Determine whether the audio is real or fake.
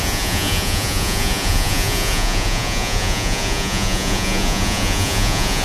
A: fake